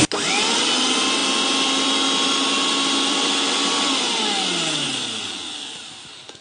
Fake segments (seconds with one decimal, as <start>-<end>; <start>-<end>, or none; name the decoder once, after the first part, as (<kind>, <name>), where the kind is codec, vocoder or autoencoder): none